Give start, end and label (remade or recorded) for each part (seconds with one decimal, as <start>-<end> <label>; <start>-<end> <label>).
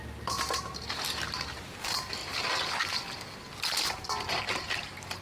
0.0-5.2 recorded